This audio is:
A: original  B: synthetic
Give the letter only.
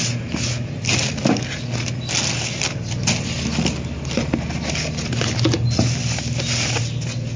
A